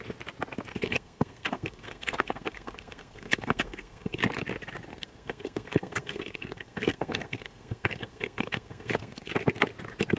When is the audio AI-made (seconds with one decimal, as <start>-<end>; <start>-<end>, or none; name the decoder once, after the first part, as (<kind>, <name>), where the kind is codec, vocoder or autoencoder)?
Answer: 0.7-4.2 (codec, SNAC); 4.9-9.3